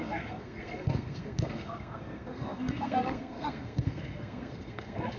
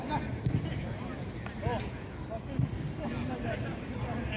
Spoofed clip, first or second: first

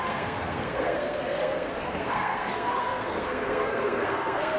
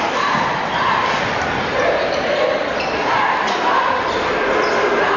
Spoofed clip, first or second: first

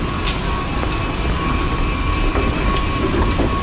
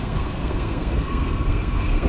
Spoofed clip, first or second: second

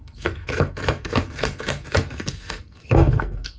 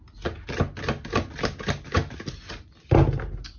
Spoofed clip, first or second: first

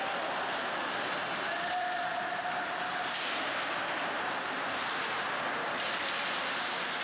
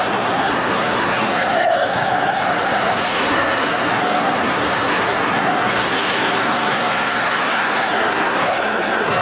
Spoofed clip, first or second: second